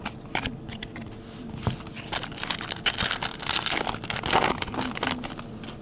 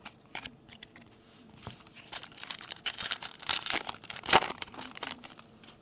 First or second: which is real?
first